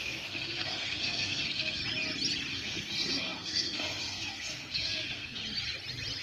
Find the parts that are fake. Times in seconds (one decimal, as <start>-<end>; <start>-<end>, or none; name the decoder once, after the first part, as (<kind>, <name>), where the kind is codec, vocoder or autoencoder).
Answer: 0.0-1.8 (codec, SNAC); 2.5-5.4

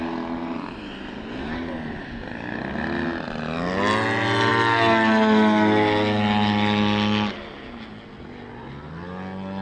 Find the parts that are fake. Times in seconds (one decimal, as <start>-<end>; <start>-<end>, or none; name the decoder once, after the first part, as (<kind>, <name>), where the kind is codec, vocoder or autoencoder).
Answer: none

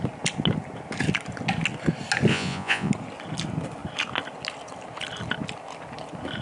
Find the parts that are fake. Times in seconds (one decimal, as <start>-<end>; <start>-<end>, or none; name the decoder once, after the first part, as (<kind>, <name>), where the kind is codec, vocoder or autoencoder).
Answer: 2.3-2.9 (vocoder, Vocos)

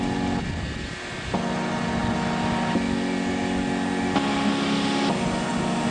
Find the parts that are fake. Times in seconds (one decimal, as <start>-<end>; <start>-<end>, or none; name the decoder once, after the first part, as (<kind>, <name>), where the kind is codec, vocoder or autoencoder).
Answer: none

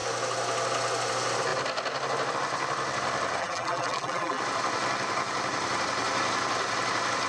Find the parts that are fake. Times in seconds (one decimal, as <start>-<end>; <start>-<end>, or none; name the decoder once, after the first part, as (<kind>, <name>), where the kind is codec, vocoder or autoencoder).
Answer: 3.4-4.4 (vocoder, BigVGAN v2)

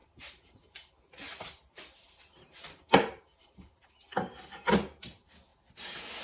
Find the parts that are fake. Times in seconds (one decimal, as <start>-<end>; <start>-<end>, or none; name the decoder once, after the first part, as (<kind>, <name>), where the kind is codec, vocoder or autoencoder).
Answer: 0.0-3.7 (vocoder, BigVGAN v2)

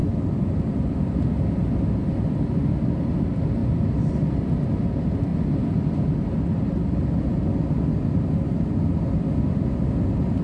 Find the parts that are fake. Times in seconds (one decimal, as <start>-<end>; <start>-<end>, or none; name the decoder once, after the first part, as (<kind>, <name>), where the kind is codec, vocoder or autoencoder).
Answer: none

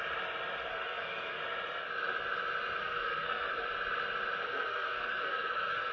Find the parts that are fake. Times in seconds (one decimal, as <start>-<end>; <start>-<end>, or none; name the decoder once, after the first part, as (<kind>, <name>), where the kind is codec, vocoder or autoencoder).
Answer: 0.7-1.4 (codec, SNAC); 2.8-3.5; 4.4-5.9